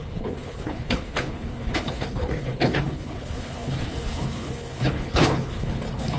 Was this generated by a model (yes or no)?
yes